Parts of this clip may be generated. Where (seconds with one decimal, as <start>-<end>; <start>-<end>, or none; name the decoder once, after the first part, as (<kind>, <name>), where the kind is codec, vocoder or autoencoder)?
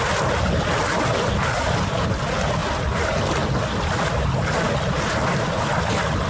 none